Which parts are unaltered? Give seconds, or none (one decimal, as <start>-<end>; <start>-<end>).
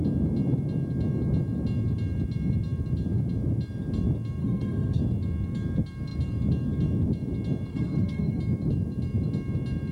0.0-4.4; 5.0-7.7; 8.4-9.9